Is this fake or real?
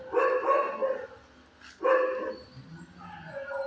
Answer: real